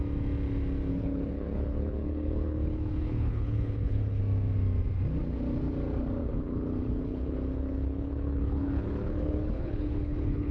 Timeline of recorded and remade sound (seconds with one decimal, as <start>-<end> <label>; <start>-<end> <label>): 0.0-0.9 recorded; 0.9-4.2 remade; 4.2-6.2 recorded; 6.2-10.5 remade